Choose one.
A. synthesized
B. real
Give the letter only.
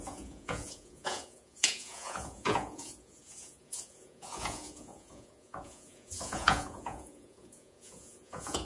A